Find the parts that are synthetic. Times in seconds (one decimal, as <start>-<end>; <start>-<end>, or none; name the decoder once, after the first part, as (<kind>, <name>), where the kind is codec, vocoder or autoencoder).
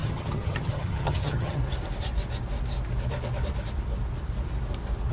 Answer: 0.0-1.6 (vocoder, HiFi-GAN)